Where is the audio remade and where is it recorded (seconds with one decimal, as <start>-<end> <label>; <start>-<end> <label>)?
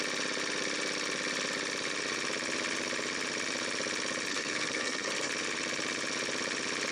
0.0-4.3 recorded; 4.3-5.3 remade; 5.3-6.9 recorded